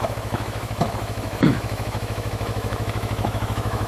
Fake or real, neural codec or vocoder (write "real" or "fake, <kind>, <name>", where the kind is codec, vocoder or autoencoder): fake, autoencoder, DAC-VAE